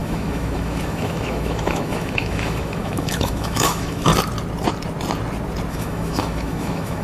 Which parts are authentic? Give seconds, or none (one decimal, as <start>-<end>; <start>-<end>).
4.1-5.7